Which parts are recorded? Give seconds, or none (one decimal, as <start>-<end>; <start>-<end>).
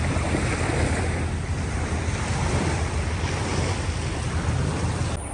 0.0-3.5; 4.3-5.3